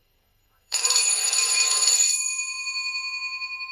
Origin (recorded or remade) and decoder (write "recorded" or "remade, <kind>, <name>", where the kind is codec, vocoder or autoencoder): remade, codec, SNAC